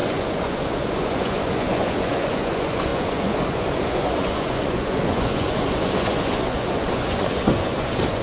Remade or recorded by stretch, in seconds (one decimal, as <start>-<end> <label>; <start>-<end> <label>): 0.0-8.2 remade